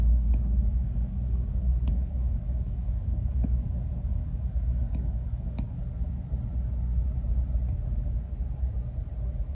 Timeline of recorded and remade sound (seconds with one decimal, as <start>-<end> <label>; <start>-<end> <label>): 0.0-5.8 remade; 5.8-9.5 recorded